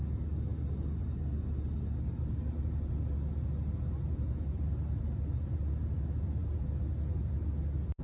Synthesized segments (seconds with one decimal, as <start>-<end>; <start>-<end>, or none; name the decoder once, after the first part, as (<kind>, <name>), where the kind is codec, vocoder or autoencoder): none